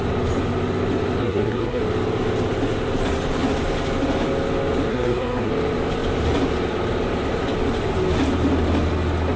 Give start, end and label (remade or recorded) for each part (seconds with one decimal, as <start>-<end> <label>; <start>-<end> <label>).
0.0-1.2 recorded; 1.2-1.8 remade; 1.8-4.9 recorded; 4.9-5.5 remade; 5.5-9.4 recorded